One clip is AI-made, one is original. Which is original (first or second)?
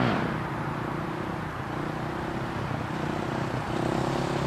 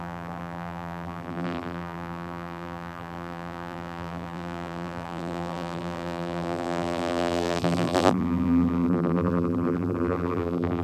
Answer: first